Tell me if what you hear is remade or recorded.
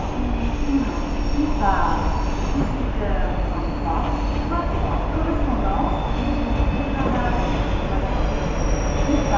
recorded